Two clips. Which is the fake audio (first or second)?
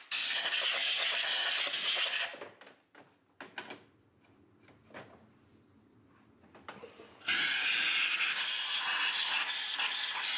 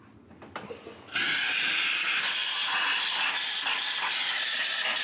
second